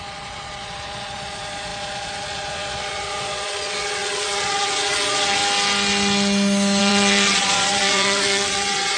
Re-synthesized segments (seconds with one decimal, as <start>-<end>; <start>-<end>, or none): 0.0-5.4; 6.8-9.0